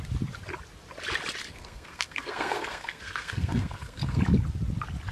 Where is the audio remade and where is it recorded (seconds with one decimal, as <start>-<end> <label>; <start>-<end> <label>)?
0.0-1.5 recorded; 1.5-4.2 remade; 4.2-5.1 recorded